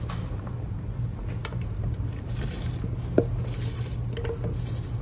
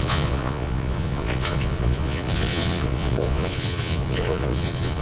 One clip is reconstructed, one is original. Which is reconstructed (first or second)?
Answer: second